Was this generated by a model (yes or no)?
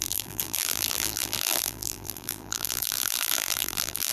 yes